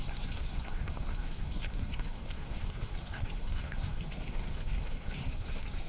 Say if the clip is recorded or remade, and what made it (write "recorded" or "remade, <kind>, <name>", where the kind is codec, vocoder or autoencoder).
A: remade, codec, SNAC